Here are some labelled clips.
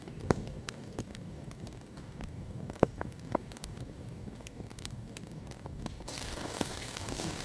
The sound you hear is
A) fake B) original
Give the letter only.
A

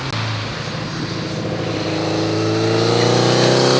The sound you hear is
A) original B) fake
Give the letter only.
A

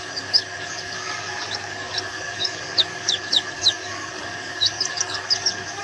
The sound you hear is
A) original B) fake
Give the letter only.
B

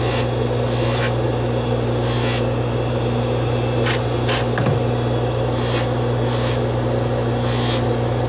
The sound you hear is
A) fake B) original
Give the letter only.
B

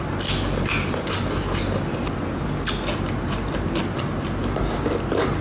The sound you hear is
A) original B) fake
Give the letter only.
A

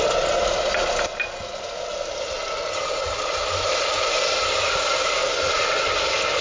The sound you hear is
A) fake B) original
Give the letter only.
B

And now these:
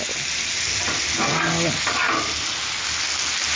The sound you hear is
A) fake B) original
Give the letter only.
B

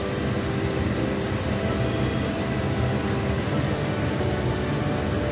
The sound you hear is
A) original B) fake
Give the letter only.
A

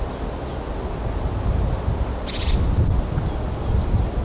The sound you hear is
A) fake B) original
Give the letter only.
B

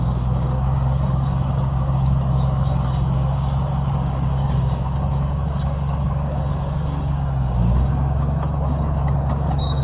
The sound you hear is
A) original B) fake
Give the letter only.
B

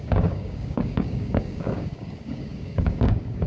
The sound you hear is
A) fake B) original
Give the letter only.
A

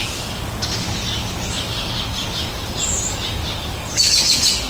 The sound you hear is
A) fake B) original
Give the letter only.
A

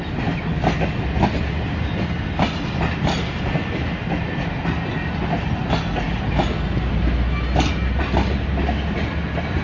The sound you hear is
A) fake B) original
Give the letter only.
B